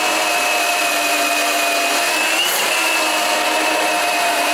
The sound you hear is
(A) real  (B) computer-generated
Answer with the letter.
A